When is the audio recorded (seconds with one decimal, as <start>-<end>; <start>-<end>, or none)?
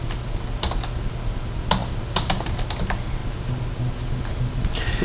0.0-5.0